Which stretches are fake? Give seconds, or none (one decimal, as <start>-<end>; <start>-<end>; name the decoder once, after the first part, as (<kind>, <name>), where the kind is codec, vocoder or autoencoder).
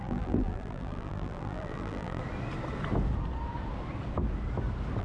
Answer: 0.0-2.2 (vocoder, BigVGAN v2)